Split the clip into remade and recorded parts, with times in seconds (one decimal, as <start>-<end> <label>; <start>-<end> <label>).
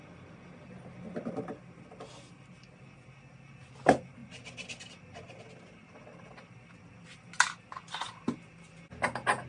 0.0-9.5 recorded